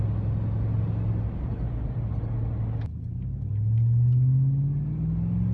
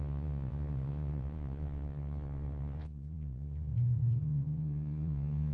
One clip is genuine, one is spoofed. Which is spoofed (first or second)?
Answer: second